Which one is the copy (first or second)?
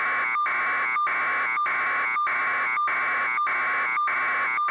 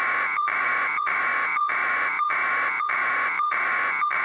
second